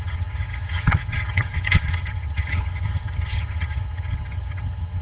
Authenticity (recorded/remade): remade